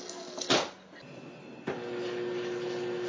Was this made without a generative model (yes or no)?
yes